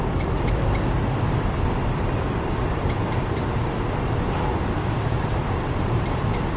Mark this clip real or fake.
fake